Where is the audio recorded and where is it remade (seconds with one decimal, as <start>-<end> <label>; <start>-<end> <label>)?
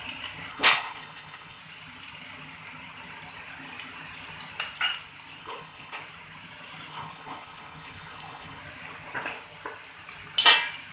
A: 0.0-0.5 recorded; 0.5-1.6 remade; 1.6-5.4 recorded; 5.4-6.0 remade; 6.0-6.9 recorded; 6.9-8.6 remade; 8.6-10.9 recorded